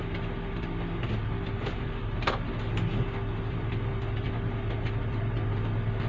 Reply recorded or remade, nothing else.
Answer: recorded